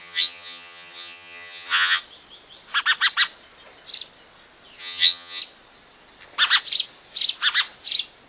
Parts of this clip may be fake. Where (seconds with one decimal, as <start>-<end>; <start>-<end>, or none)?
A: 0.0-2.0; 4.8-5.4